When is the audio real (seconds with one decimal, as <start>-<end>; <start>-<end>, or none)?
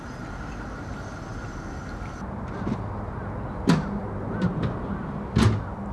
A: 0.0-5.9